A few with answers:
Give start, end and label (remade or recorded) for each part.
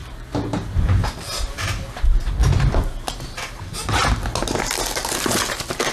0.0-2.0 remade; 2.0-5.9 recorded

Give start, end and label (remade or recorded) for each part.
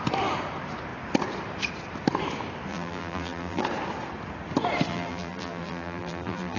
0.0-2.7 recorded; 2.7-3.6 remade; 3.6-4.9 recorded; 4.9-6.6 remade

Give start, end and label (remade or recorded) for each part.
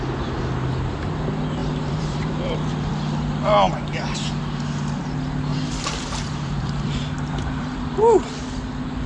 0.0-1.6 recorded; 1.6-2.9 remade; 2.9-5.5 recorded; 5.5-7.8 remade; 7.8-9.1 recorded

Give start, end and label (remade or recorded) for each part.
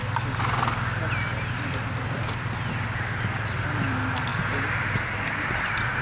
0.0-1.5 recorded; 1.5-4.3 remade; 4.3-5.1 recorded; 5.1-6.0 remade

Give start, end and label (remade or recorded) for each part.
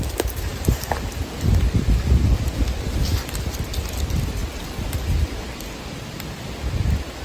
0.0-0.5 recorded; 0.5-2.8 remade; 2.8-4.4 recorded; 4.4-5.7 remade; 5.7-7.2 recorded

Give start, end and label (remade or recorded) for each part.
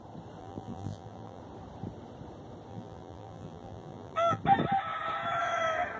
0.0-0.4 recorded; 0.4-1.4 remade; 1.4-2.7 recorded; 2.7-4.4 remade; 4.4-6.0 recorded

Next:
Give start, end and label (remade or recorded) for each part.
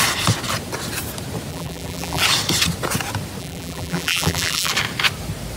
0.0-1.5 recorded; 1.5-2.2 remade; 2.2-3.4 recorded; 3.4-4.7 remade; 4.7-5.6 recorded